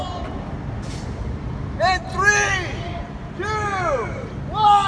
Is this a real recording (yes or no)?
yes